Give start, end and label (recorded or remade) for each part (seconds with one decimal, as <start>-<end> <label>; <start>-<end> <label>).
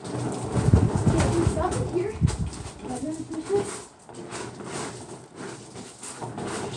0.0-6.8 recorded